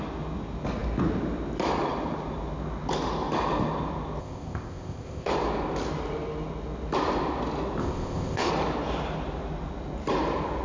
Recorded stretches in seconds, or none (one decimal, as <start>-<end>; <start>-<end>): 0.0-4.2; 5.3-7.8; 8.5-10.6